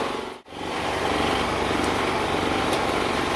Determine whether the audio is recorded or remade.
recorded